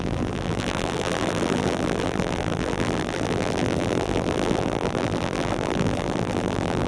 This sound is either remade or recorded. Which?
remade